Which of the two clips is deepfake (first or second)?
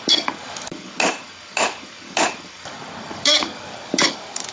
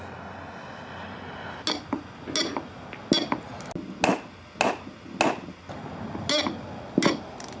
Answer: first